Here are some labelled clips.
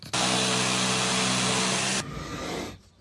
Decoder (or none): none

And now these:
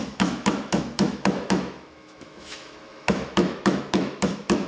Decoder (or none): autoencoder, DAC-VAE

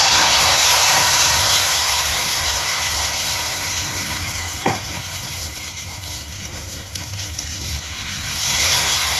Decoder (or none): codec, SNAC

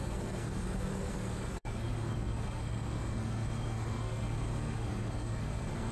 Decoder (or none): codec, SNAC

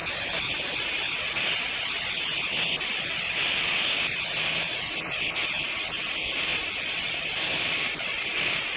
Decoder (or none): none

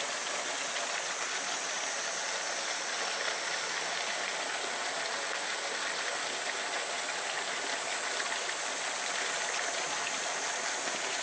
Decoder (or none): none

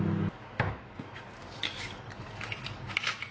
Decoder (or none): codec, DAC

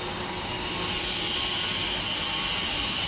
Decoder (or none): none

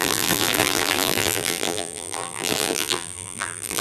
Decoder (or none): vocoder, BigVGAN v2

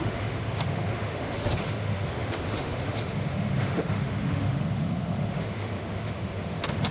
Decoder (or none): autoencoder, DAC-VAE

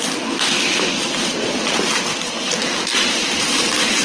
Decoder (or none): none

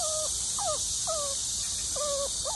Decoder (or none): none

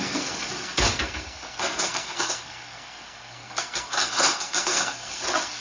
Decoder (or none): codec, SNAC